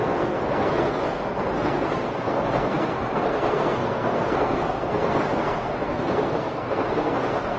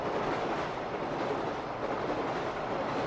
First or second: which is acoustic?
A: second